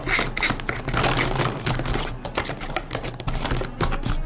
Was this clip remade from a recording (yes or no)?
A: no